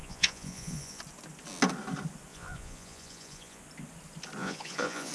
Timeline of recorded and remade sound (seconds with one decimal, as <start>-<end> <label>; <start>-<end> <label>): 0.0-1.0 remade; 1.0-2.3 recorded; 2.3-3.6 remade; 3.6-4.4 recorded; 4.4-5.1 remade

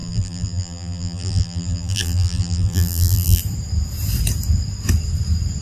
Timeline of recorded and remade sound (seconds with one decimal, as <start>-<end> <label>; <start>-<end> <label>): 0.0-3.4 remade; 3.4-5.6 recorded